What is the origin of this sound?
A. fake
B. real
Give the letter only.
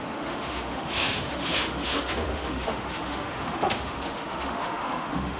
A